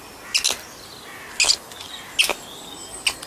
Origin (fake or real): real